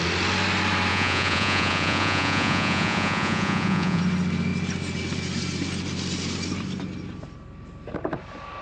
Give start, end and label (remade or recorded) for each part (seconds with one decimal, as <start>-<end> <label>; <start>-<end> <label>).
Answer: 0.0-0.9 recorded; 0.9-4.0 remade; 4.0-8.6 recorded

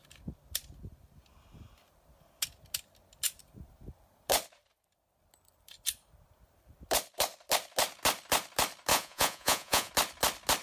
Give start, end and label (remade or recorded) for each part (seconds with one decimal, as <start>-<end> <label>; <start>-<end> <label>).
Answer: 0.0-8.9 recorded; 8.9-9.9 remade; 9.9-10.6 recorded

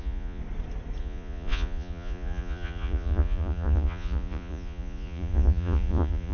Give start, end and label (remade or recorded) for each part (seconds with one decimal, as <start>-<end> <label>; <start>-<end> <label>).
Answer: 0.0-0.4 remade; 0.4-1.0 recorded; 1.0-6.3 remade

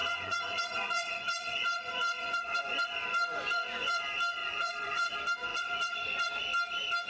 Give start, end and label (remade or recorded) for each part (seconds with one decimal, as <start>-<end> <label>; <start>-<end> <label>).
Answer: 0.0-4.0 remade; 4.0-4.4 recorded; 4.4-5.1 remade; 5.1-5.5 recorded; 5.5-6.3 remade; 6.3-7.1 recorded

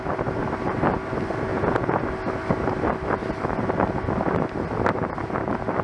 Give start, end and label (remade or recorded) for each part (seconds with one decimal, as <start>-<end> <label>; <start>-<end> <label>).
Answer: 0.0-1.5 recorded; 1.5-2.0 remade; 2.0-5.8 recorded

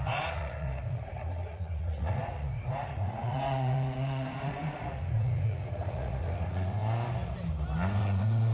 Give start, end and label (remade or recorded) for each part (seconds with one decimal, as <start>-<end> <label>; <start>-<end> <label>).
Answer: 0.0-6.8 remade; 6.8-8.0 recorded; 8.0-8.5 remade

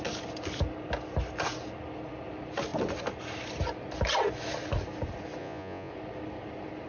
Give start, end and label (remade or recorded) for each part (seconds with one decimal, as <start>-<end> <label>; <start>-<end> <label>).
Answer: 0.0-5.4 recorded; 5.4-5.9 remade; 5.9-6.9 recorded